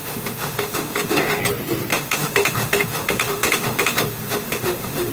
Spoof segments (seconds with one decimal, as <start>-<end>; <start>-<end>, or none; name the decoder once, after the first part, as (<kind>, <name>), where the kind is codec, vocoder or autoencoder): 0.0-1.4 (autoencoder, DAC-VAE); 1.9-5.1